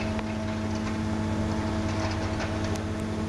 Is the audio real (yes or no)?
yes